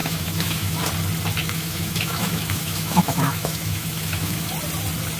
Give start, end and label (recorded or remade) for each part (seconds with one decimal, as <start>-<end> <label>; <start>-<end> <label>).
0.0-0.8 remade; 0.8-1.4 recorded; 1.4-4.5 remade; 4.5-5.2 recorded